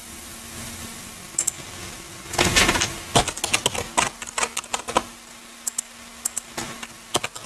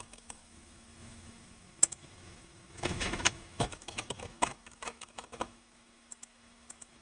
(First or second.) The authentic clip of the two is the first